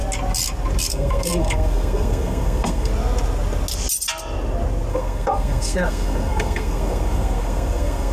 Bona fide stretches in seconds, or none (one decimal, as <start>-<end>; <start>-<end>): 0.0-0.9; 2.9-4.9